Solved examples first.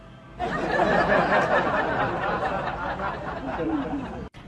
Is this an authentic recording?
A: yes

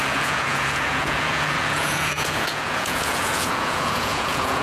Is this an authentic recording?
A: no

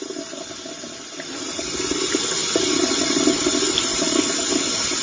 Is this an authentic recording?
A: yes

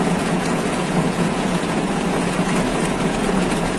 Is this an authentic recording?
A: no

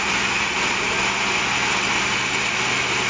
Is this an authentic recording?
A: yes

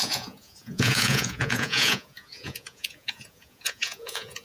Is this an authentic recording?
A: no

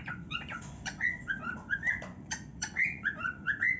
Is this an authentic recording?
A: no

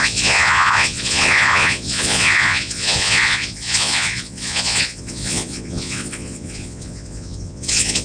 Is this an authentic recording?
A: no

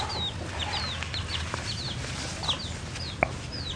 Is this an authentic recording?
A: yes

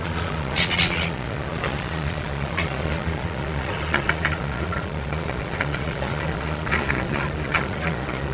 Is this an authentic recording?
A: no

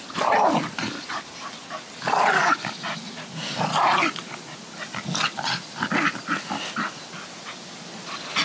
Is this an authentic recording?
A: yes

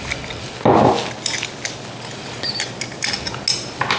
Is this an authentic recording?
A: yes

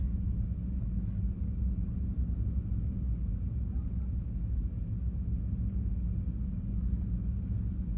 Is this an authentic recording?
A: yes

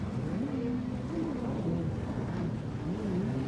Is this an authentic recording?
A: yes